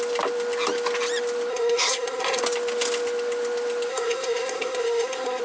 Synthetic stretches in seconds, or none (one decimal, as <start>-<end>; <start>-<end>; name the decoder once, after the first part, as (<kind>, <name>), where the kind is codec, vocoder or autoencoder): 1.5-2.4 (codec, SNAC); 3.9-5.4